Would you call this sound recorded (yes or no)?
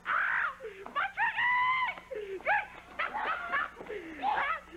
yes